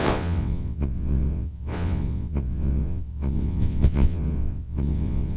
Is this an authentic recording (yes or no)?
no